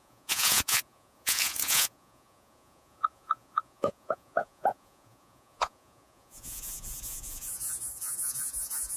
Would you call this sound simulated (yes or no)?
yes